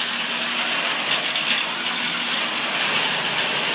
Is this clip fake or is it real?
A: real